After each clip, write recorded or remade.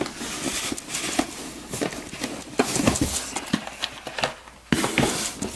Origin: recorded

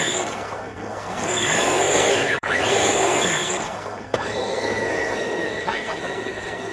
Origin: remade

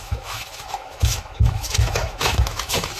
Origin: remade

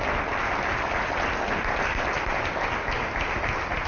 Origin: recorded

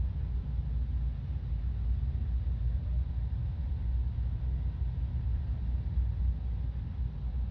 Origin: recorded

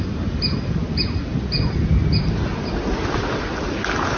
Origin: recorded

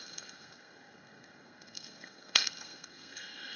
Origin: remade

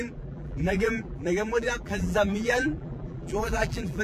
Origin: remade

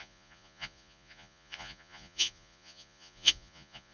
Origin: remade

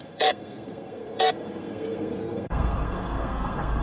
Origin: remade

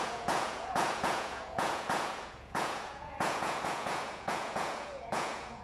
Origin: remade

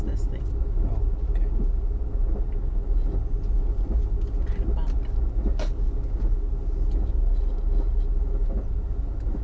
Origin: recorded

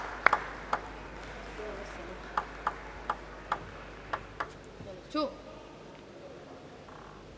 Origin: recorded